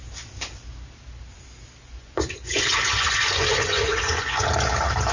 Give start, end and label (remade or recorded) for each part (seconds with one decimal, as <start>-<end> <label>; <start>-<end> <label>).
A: 0.0-1.8 recorded; 1.8-4.4 remade; 4.4-5.1 recorded